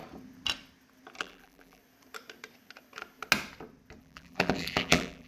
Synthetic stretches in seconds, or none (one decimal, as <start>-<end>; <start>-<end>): 1.2-1.8; 4.0-5.3